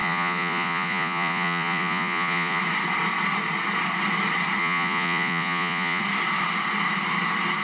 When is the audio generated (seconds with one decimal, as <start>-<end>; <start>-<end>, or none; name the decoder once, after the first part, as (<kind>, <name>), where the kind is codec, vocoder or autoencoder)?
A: 0.0-2.6 (vocoder, Vocos); 4.6-6.0